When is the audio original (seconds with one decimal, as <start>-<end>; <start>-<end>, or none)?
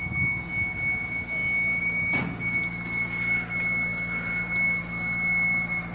0.0-5.9